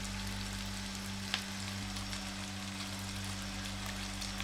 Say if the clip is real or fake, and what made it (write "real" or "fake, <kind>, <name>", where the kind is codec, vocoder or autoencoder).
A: real